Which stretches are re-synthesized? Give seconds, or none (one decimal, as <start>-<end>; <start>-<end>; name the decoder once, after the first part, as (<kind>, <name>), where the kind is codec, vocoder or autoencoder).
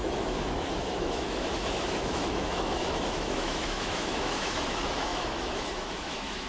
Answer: 0.0-6.5 (autoencoder, DAC-VAE)